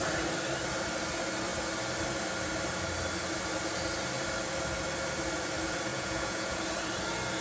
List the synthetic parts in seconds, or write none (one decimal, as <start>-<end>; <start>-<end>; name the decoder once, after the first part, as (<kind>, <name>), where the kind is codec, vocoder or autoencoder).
5.9-6.6 (vocoder, Vocos)